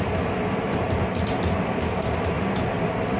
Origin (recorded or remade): recorded